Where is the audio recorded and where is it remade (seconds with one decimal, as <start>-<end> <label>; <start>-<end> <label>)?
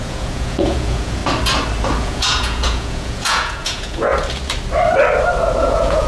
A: 0.0-1.2 remade; 1.2-2.0 recorded; 2.0-4.1 remade; 4.1-5.6 recorded; 5.6-6.1 remade